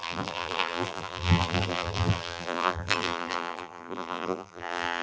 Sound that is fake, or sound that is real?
fake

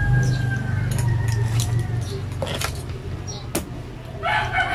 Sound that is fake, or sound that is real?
real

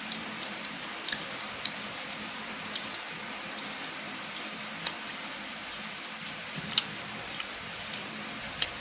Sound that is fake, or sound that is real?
fake